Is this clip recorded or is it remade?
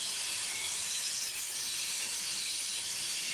remade